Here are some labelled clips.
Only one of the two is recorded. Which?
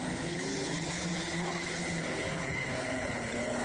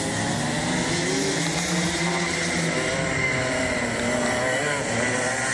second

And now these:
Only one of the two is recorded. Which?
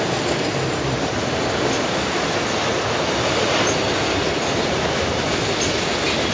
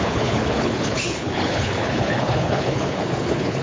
first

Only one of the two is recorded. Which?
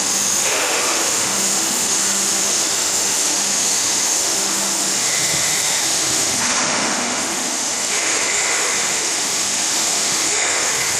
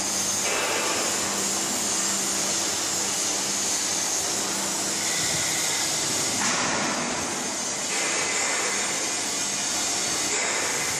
second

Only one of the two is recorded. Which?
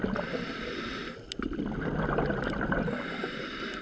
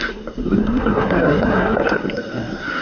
first